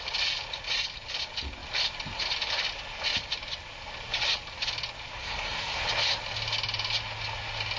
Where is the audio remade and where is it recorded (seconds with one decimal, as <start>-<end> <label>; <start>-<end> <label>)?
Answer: 0.0-5.2 recorded; 5.2-5.8 remade; 5.8-7.8 recorded